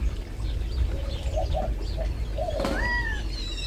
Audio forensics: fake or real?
real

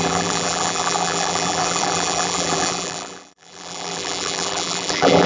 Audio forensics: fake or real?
fake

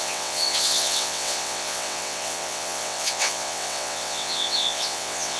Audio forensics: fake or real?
fake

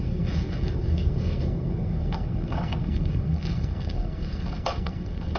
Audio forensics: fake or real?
fake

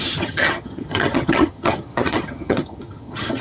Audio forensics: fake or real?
fake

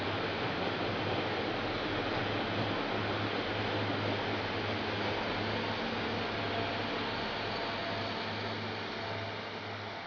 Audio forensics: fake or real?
real